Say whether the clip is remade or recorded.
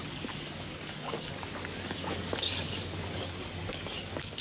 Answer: remade